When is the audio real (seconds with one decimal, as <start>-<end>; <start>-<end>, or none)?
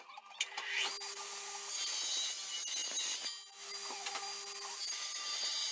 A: 2.8-4.7